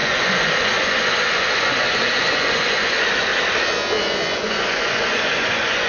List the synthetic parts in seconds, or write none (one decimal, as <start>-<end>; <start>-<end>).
0.0-3.3; 4.0-5.9